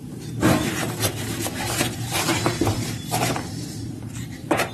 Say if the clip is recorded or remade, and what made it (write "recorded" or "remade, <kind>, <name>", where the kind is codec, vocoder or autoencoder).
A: remade, vocoder, BigVGAN v2